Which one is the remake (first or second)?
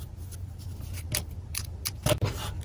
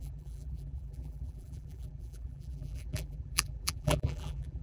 second